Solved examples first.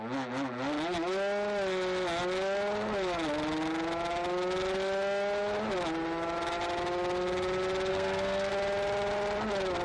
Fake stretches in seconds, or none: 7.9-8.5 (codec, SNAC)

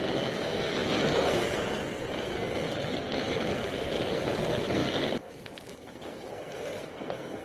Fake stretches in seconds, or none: 0.0-7.4 (codec, SNAC)